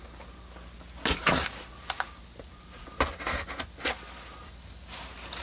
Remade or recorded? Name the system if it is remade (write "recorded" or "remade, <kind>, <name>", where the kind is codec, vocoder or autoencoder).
recorded